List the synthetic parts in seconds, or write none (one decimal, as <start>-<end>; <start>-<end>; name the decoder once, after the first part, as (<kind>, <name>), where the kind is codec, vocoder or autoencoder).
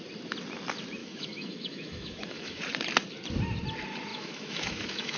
1.0-2.6 (autoencoder, DAC-VAE); 4.1-5.2